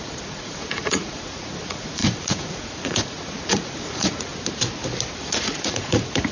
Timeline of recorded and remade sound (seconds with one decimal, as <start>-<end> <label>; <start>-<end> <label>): 0.0-4.3 remade; 4.3-5.1 recorded; 5.1-6.3 remade

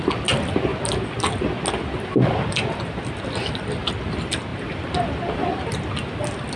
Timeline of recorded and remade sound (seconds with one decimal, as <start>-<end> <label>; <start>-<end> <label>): 0.0-6.6 recorded

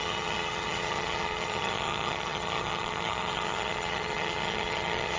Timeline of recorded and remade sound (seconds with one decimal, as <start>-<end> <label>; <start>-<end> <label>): 0.0-5.2 remade